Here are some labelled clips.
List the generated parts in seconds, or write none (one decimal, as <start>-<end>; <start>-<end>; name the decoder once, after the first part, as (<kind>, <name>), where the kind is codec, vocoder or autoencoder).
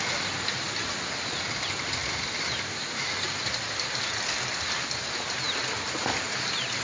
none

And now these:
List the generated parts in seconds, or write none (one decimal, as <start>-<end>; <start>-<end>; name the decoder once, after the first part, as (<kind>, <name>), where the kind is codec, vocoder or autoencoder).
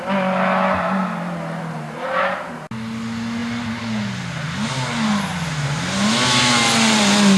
none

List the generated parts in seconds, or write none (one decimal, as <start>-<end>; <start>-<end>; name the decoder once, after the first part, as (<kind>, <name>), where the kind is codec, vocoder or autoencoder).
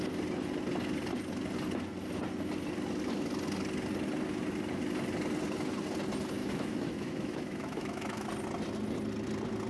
6.4-8.3 (autoencoder, DAC-VAE)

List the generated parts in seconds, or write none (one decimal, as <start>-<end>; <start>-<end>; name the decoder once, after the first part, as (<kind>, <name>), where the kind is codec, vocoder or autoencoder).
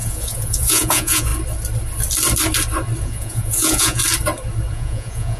0.0-1.3 (vocoder, Vocos); 3.0-4.0; 4.7-5.4